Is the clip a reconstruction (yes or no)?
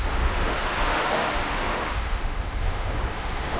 yes